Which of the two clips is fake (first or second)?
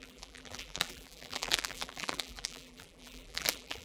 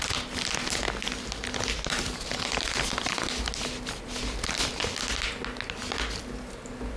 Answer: first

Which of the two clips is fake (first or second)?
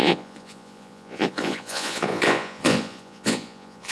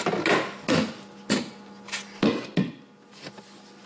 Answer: first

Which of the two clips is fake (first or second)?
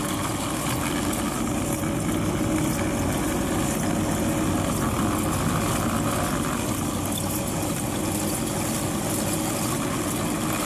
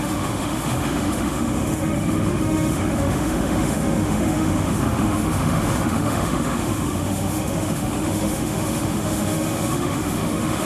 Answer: second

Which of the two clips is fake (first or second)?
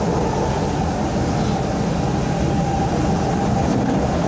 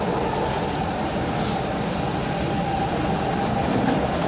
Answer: second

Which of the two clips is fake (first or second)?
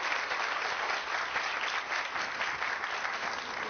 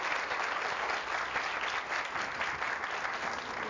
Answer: first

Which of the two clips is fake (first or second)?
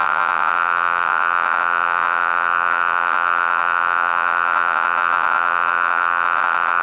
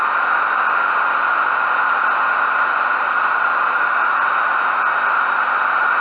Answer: first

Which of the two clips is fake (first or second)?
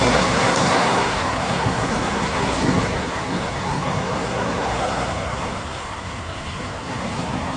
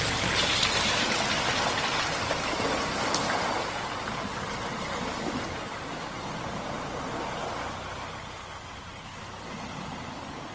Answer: first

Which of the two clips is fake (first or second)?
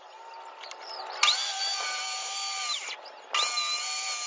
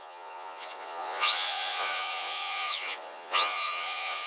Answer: second